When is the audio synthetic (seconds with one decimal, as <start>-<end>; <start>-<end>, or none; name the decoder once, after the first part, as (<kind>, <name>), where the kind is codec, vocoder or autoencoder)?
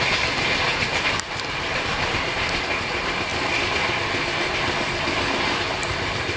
0.7-2.1 (vocoder, BigVGAN v2); 5.8-6.4